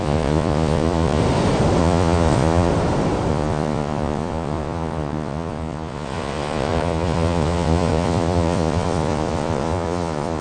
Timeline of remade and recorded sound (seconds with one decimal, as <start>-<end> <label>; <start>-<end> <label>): 0.0-1.2 remade; 1.2-1.8 recorded; 1.8-2.7 remade; 2.7-3.3 recorded; 3.3-10.4 remade